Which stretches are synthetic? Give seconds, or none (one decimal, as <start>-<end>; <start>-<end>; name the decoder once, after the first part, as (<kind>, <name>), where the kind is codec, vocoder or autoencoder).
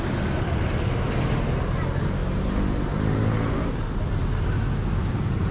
none